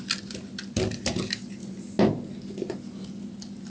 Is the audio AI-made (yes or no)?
no